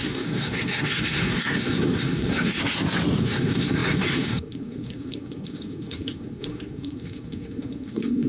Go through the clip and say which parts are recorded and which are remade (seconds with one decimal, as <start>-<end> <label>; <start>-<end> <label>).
0.0-2.6 remade; 2.6-3.2 recorded; 3.2-8.3 remade